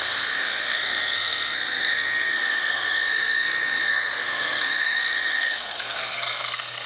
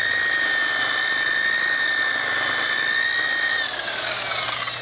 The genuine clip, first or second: second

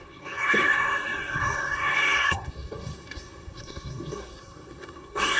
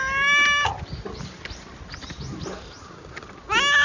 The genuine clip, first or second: second